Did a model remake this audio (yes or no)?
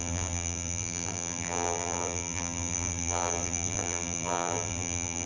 yes